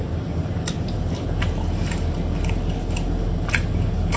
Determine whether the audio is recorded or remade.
recorded